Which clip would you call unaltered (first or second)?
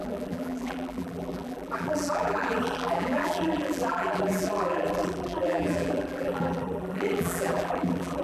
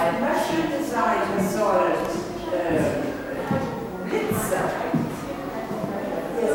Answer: second